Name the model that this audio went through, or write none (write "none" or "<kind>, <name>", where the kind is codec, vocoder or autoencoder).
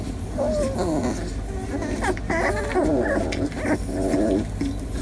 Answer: none